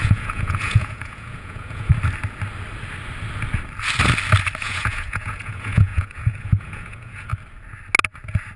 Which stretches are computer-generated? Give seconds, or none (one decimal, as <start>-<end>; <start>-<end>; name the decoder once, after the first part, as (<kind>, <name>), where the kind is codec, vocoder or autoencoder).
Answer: 0.0-1.9 (vocoder, Vocos); 4.6-7.3